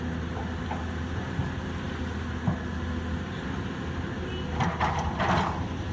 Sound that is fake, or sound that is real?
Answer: real